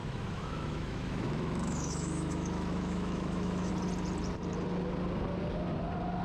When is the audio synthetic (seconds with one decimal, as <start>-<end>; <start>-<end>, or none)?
0.0-3.7